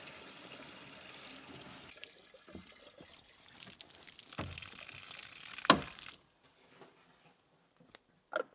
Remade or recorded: recorded